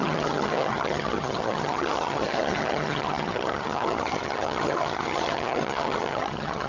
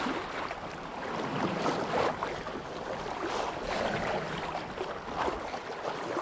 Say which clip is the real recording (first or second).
second